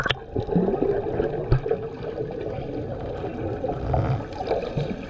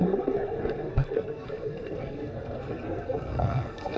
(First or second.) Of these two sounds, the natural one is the first